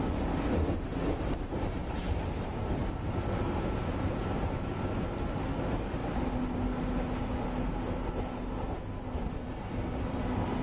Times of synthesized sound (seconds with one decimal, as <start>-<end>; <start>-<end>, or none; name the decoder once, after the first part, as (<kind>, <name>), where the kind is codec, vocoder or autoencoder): 1.8-2.4 (vocoder, BigVGAN v2); 2.8-4.1